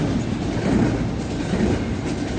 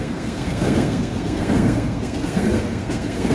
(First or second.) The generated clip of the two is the second